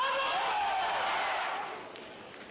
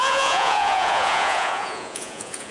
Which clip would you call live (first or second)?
first